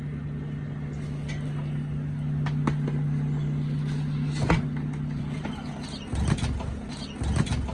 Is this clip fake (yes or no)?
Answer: no